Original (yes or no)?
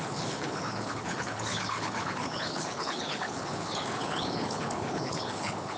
no